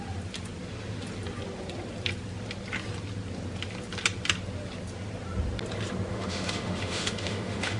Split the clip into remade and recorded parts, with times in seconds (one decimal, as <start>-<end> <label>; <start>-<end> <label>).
0.0-6.1 recorded; 6.1-7.8 remade